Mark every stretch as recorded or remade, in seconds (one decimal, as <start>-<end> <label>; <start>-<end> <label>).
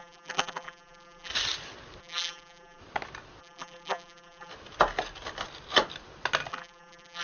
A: 0.0-1.3 remade; 1.3-2.0 recorded; 2.0-2.8 remade; 2.8-3.4 recorded; 3.4-4.5 remade; 4.5-6.5 recorded; 6.5-7.2 remade